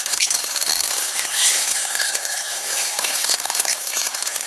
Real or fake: fake